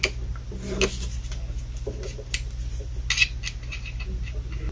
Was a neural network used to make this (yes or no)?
no